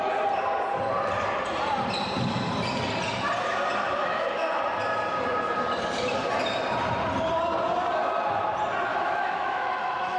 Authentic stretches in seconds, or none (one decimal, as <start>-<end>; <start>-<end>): 0.0-4.0; 4.6-8.9